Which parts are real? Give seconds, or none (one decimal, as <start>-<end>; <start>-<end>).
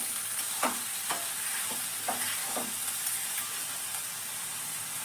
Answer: 0.0-5.0